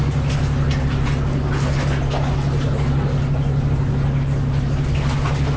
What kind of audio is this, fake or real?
real